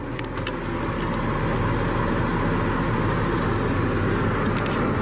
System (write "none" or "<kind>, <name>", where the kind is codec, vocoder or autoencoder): none